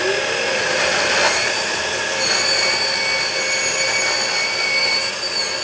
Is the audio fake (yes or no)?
no